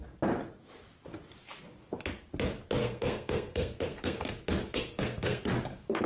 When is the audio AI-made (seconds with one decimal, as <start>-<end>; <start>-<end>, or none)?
2.8-4.3; 4.7-5.5